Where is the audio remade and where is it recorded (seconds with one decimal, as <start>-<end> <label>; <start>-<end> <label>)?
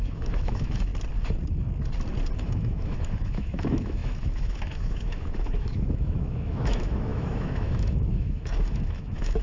0.0-0.9 remade; 0.9-2.4 recorded; 2.4-9.4 remade